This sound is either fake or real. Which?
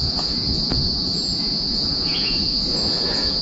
fake